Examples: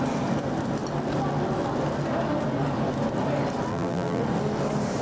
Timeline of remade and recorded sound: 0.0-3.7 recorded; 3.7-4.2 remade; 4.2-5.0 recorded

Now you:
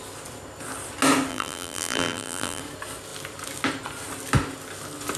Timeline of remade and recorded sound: 0.0-1.3 recorded; 1.3-2.6 remade; 2.6-5.2 recorded

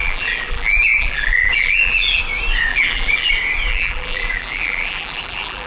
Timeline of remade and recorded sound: 0.0-2.2 remade; 2.2-2.7 recorded; 2.7-3.3 remade; 3.3-3.7 recorded; 3.7-5.7 remade